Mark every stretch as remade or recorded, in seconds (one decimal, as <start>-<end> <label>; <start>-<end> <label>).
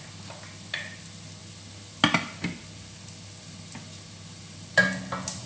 0.0-5.5 recorded